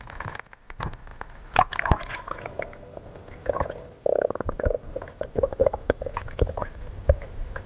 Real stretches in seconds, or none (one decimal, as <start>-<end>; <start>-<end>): 0.0-5.5; 6.6-7.7